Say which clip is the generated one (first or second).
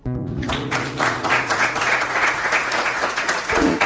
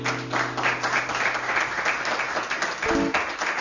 first